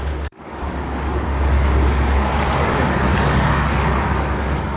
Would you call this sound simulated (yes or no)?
yes